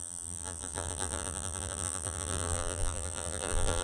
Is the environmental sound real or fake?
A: fake